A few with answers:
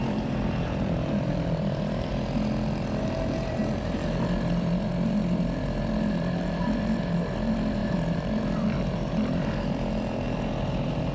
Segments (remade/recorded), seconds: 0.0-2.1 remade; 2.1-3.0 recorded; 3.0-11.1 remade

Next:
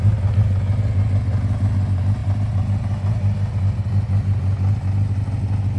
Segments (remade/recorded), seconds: 0.0-5.8 recorded